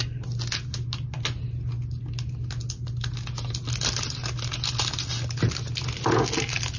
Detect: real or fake real